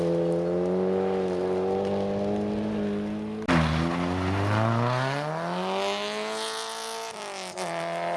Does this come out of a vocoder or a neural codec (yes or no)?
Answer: no